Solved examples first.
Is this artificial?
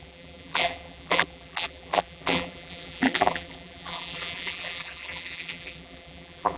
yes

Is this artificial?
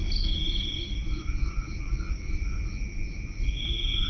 no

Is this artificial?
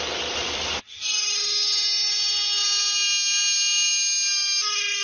no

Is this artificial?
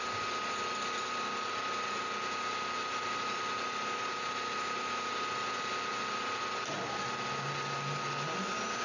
no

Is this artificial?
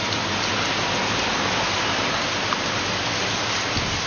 no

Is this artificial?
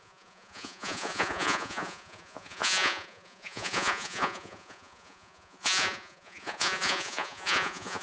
yes